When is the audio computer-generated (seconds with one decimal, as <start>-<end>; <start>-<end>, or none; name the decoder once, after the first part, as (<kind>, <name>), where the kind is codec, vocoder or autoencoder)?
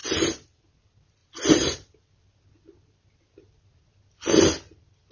0.0-0.7 (vocoder, BigVGAN v2); 1.2-2.1